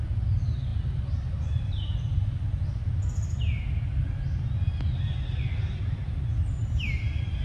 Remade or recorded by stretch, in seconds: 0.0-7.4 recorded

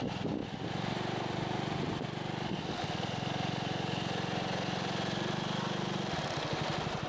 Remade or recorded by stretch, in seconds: 0.0-7.1 recorded